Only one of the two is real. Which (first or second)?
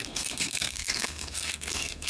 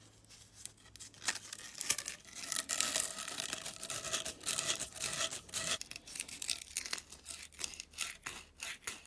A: second